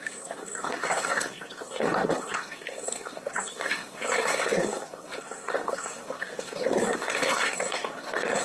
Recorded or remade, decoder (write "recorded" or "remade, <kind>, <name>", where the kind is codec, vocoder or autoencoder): remade, codec, SNAC